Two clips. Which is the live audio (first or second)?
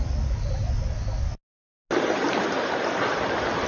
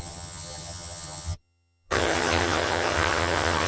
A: first